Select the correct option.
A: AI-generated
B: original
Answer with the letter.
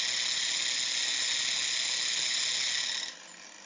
B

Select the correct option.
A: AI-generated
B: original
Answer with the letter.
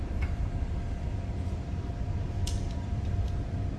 A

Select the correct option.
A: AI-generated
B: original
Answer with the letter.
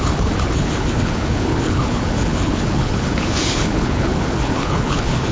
A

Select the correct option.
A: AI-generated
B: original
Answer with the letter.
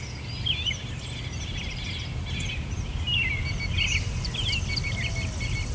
B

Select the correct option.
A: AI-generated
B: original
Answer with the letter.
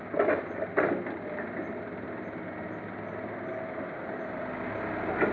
B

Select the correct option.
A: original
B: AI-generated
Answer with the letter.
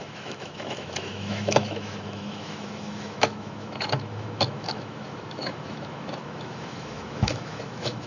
B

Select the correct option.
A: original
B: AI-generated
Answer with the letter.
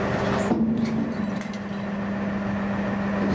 A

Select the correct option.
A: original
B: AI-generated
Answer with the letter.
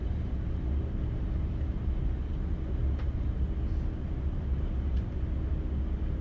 A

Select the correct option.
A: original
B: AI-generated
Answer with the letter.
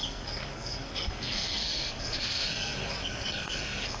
B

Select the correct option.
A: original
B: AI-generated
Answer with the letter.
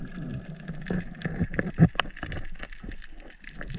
A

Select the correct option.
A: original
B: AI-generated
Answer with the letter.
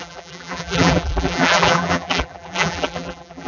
B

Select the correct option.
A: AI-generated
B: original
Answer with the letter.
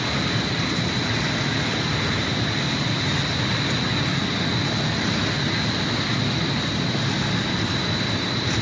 B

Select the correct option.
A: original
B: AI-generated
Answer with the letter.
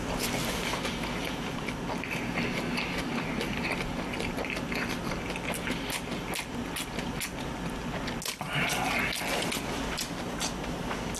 A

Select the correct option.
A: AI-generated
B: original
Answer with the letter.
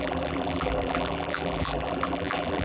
A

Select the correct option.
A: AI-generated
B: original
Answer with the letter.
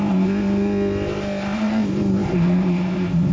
A